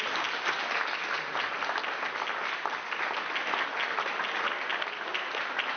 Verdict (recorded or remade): recorded